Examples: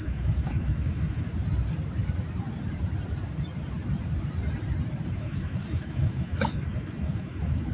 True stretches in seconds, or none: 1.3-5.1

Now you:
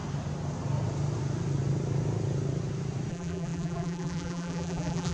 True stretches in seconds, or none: 0.0-3.1

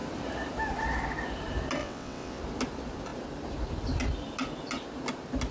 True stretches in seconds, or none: 0.0-1.8; 2.4-5.5

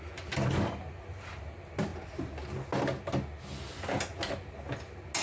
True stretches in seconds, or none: 0.0-5.2

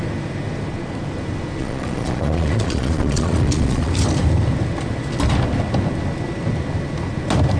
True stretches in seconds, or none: 0.0-1.6; 3.9-7.6

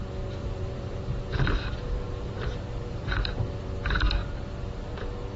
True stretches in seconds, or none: 0.0-0.4; 3.6-4.2; 5.0-5.4